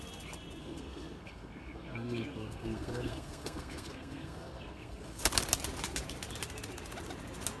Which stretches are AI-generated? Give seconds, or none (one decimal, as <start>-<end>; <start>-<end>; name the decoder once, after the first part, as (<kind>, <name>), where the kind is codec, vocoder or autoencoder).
0.6-5.2 (codec, SNAC)